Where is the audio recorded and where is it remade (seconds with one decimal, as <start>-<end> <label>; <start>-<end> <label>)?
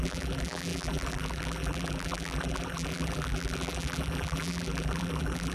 0.0-5.5 remade